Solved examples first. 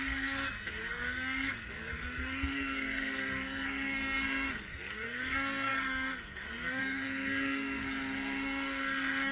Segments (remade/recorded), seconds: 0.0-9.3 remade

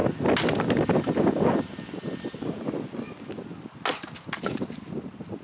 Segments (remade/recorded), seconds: 0.0-5.4 recorded

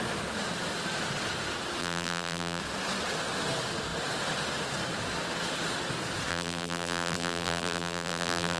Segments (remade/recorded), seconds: 0.0-1.8 recorded; 1.8-2.6 remade; 2.6-6.3 recorded; 6.3-8.6 remade